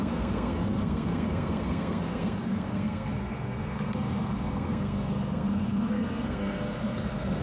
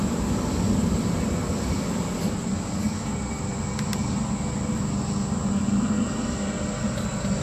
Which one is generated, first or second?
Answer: first